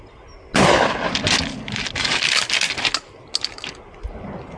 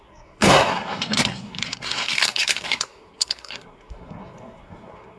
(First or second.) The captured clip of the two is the first